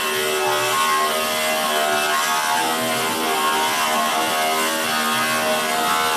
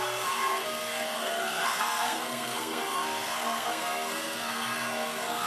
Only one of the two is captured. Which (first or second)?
first